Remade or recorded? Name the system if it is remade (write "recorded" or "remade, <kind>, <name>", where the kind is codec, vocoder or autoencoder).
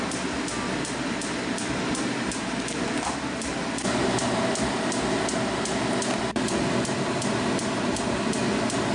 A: recorded